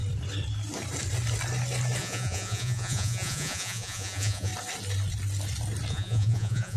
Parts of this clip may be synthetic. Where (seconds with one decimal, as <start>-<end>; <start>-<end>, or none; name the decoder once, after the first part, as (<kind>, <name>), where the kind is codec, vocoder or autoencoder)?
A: 2.0-4.5 (vocoder, Vocos); 5.9-6.8